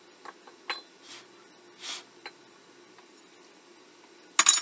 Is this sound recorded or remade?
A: recorded